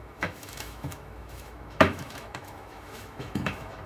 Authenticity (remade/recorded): remade